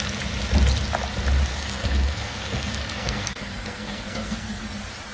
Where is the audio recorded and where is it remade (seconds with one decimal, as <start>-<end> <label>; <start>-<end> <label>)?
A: 0.0-1.5 recorded; 1.5-4.6 remade; 4.6-5.1 recorded